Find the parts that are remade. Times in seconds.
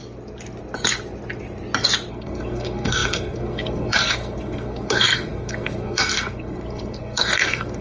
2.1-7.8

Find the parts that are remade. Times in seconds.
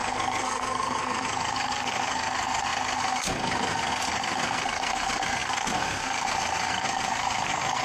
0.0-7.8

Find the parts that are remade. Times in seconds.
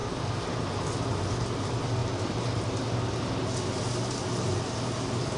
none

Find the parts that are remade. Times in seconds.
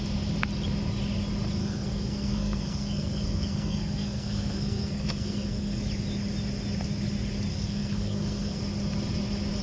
1.6-5.8; 7.5-8.6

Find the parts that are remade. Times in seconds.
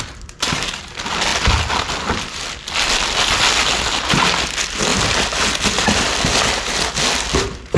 none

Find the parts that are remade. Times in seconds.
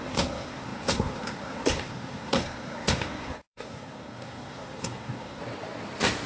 0.0-5.4